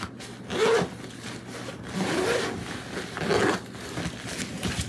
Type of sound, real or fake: real